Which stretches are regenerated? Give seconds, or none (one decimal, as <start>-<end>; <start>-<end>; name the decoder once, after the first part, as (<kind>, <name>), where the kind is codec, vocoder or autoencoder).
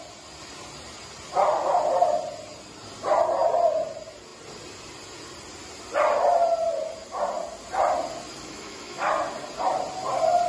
8.5-9.1 (autoencoder, DAC-VAE)